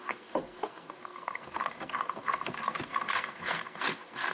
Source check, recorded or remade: remade